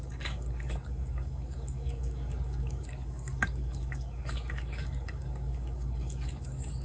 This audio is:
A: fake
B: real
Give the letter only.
A